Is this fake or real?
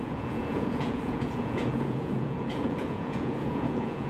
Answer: fake